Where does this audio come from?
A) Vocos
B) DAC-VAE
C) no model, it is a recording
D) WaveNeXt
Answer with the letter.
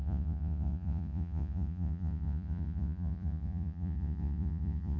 A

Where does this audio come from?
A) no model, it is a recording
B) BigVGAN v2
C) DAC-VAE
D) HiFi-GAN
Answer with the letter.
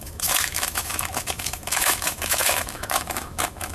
C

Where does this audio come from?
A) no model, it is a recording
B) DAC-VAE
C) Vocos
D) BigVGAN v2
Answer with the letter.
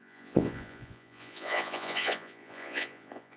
C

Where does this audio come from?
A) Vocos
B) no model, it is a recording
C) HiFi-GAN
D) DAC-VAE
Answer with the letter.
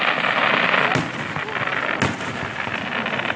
B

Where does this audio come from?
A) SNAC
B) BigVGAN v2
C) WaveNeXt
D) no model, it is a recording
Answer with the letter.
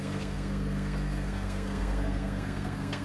A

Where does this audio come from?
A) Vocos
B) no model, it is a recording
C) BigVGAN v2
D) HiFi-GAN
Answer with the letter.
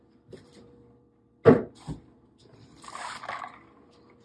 C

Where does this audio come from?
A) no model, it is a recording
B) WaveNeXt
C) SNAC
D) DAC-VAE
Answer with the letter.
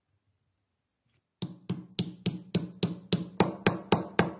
A